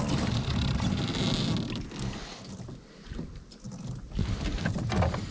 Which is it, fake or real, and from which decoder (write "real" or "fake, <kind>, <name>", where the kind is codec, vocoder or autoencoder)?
real